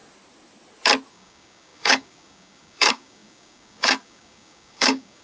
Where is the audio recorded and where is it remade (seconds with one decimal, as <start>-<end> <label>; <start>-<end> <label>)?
0.0-1.1 recorded; 1.1-5.2 remade